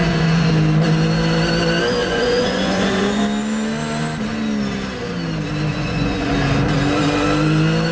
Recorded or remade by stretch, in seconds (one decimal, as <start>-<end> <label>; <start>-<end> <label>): 0.0-0.5 remade; 0.5-2.0 recorded; 2.0-3.2 remade; 3.2-5.7 recorded; 5.7-6.3 remade; 6.3-7.9 recorded